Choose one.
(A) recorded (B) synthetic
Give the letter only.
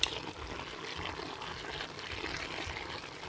A